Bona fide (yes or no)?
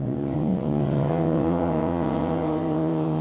no